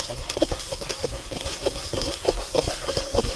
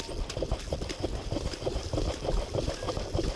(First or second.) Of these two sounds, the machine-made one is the first